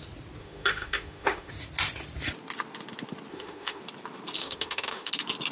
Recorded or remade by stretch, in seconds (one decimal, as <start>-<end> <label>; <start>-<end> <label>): 0.0-0.4 recorded; 0.4-1.5 remade; 1.5-3.3 recorded; 3.3-3.8 remade; 3.8-4.4 recorded; 4.4-5.1 remade; 5.1-5.5 recorded